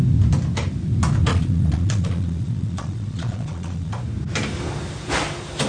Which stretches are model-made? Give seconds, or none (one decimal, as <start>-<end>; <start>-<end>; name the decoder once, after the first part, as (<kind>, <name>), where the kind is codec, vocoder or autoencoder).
1.3-3.9 (vocoder, Vocos)